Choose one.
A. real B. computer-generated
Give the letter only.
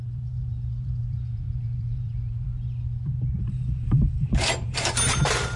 B